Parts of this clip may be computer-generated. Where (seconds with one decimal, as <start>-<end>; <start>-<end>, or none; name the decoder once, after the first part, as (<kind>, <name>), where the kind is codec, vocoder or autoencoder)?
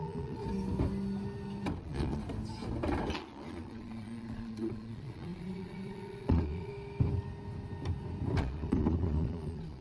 0.0-0.4 (vocoder, Vocos); 1.8-2.2; 3.1-6.7; 8.4-9.8